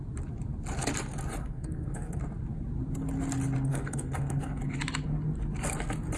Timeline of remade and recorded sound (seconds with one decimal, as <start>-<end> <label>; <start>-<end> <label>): 0.0-1.4 recorded; 1.4-2.2 remade; 2.2-3.7 recorded; 3.7-4.6 remade; 4.6-6.2 recorded